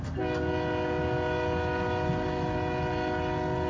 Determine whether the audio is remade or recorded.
recorded